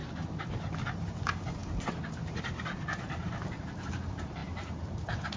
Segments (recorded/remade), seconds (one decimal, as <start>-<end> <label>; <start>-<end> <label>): 0.0-1.0 recorded; 1.0-5.4 remade